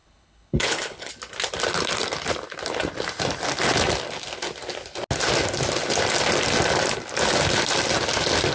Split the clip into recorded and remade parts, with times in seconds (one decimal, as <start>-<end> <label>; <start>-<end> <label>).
0.0-1.1 remade; 1.1-8.5 recorded